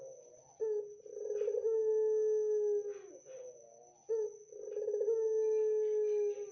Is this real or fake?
real